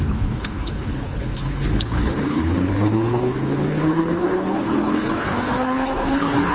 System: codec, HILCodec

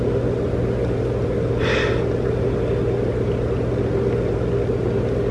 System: none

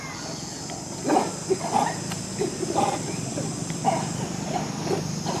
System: none